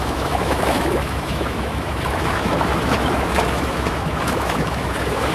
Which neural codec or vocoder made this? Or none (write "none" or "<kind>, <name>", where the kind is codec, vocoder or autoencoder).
autoencoder, DAC-VAE